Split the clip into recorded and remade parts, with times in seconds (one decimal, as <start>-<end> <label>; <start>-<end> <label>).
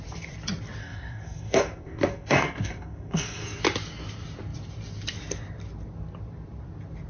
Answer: 0.0-0.8 recorded; 0.8-3.6 remade; 3.6-7.1 recorded